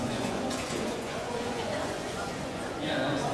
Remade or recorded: remade